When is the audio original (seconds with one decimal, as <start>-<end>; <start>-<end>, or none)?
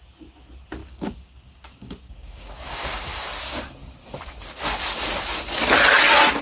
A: 0.0-0.8; 3.2-6.4